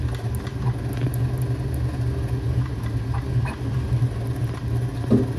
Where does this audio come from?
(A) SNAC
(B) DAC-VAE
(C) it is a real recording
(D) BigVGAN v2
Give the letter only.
C